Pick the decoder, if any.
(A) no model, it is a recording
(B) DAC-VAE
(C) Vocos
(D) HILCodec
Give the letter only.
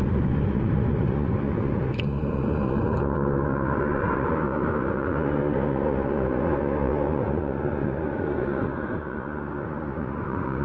C